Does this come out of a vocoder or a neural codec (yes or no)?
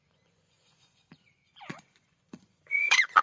yes